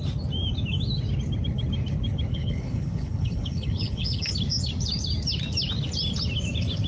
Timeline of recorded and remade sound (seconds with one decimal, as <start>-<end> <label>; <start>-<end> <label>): 0.0-2.3 recorded; 2.3-4.2 remade; 4.2-6.9 recorded